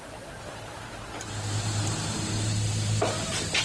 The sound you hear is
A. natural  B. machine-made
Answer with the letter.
A